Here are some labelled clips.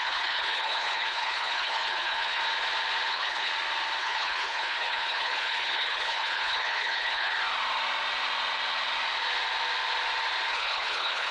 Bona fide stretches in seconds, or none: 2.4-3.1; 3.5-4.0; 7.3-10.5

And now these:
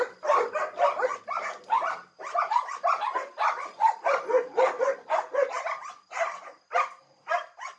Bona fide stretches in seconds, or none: 1.1-2.4

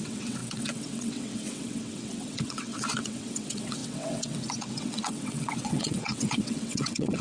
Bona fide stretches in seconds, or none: none

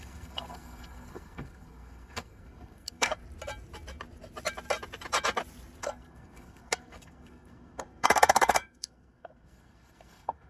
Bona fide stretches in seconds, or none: 3.2-5.8

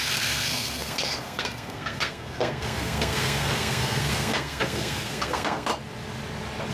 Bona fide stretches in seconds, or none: 5.7-6.7

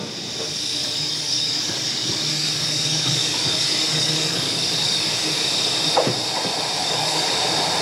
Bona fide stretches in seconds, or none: 0.0-0.8; 5.1-6.8; 7.3-7.8

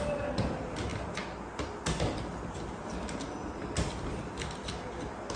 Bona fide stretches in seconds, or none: 0.0-5.4